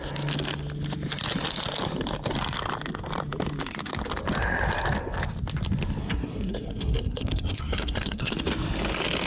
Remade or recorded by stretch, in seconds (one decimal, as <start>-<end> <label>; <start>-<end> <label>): 0.0-6.0 recorded; 6.0-8.3 remade; 8.3-9.3 recorded